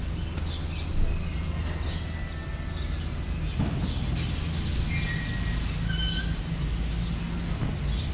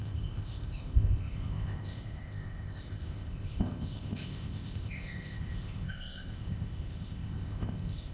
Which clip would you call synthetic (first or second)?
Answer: second